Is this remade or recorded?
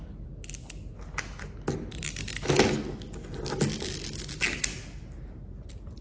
recorded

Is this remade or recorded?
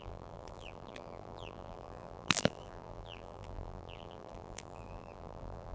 remade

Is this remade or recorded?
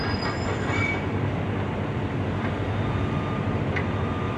remade